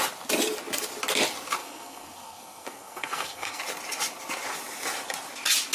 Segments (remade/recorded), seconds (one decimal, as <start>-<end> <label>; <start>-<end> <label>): 0.0-1.6 recorded; 1.6-3.6 remade; 3.6-5.7 recorded